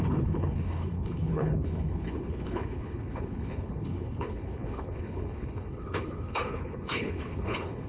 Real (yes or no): no